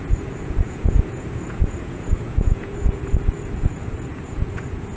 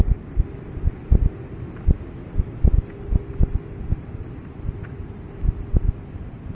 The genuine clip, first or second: second